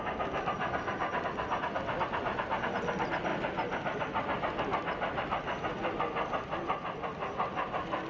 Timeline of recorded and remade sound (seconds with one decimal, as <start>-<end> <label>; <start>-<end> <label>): 0.0-8.1 recorded